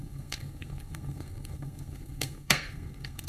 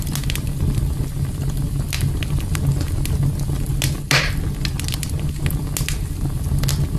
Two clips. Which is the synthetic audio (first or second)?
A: first